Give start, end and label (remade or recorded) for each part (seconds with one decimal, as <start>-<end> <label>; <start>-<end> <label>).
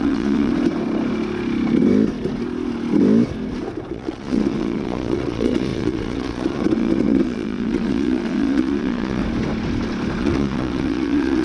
0.0-0.5 remade; 0.5-3.9 recorded; 3.9-9.2 remade; 9.2-10.2 recorded; 10.2-11.4 remade